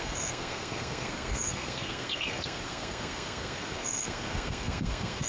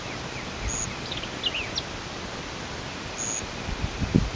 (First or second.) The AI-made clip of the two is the first